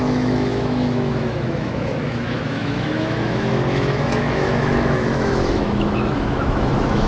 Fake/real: fake